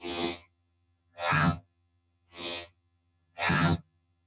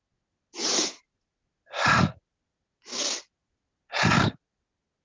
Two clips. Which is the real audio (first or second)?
second